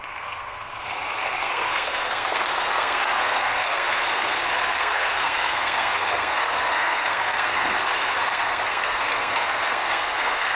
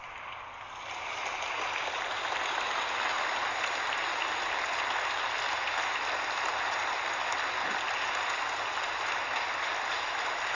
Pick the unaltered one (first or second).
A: second